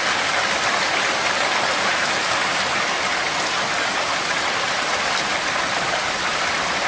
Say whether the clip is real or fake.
real